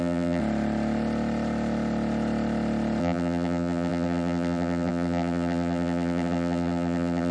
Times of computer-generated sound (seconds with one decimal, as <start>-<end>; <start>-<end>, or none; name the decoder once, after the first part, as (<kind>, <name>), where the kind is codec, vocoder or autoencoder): 0.0-0.4 (vocoder, BigVGAN v2); 3.0-7.3